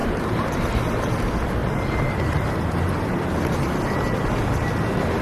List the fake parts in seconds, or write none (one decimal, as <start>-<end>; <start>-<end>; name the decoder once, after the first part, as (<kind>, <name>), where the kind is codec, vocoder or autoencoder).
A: 0.0-1.1 (vocoder, BigVGAN v2); 1.6-3.2